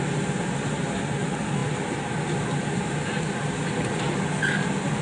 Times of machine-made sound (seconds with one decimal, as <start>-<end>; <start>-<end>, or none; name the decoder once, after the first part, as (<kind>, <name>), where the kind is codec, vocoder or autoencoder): none